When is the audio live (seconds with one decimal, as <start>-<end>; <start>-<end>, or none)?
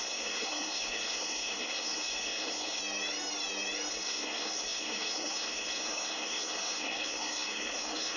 2.8-3.9